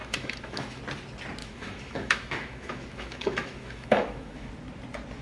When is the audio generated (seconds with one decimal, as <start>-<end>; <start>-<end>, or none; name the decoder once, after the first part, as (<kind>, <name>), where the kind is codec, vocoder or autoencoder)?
0.0-0.8 (autoencoder, DAC-VAE); 1.4-4.5